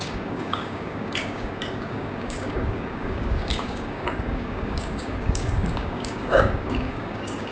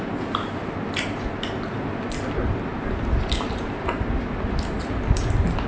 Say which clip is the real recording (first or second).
second